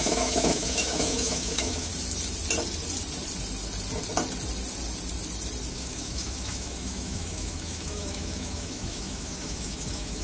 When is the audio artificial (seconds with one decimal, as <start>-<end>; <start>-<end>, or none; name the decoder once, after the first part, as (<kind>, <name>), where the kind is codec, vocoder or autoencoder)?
0.0-1.9 (autoencoder, DAC-VAE); 5.7-10.2